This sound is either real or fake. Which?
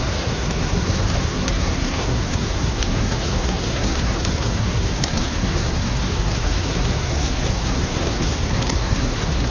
fake